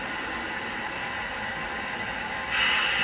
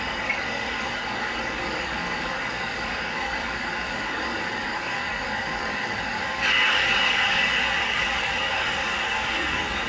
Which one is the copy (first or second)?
second